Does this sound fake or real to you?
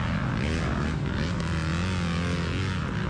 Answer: real